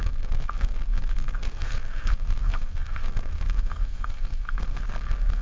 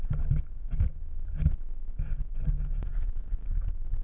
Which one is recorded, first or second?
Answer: second